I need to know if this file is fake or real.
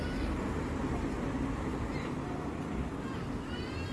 real